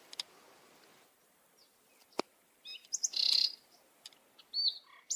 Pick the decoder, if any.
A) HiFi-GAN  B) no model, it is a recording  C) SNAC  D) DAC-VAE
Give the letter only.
B